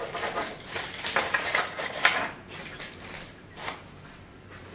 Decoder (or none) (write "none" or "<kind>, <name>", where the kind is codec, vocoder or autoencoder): none